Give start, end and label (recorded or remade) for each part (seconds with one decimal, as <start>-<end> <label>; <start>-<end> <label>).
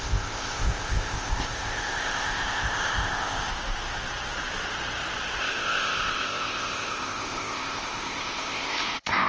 0.0-3.5 remade; 3.5-5.4 recorded; 5.4-9.3 remade